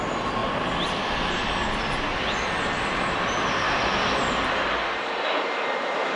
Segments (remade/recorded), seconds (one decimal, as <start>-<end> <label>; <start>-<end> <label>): 0.0-6.2 recorded